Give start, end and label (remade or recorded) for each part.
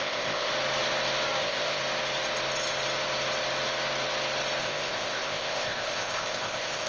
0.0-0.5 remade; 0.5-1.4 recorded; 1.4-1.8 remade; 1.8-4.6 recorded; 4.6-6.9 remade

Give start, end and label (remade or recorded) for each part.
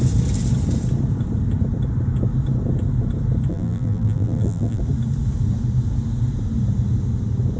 0.0-3.5 recorded; 3.5-4.8 remade; 4.8-7.6 recorded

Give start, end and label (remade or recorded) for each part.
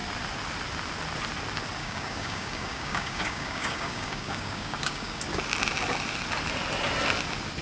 0.0-1.8 recorded; 1.8-5.2 remade; 5.2-7.6 recorded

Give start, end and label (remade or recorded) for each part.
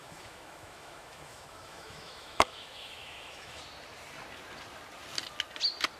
0.0-3.6 remade; 3.6-6.0 recorded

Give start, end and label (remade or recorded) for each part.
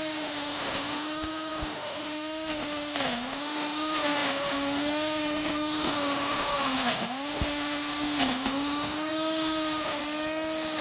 0.0-10.0 remade; 10.0-10.8 recorded